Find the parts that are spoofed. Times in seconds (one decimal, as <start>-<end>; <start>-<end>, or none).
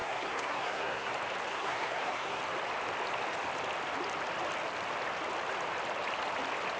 0.0-1.1; 1.5-2.4